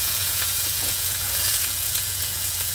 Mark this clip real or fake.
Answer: fake